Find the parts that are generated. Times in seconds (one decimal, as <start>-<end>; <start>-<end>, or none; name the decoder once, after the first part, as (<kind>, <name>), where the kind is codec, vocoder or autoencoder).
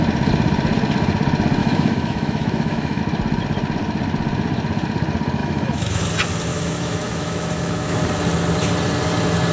1.6-3.0 (autoencoder, DAC-VAE); 5.4-6.0; 6.5-8.0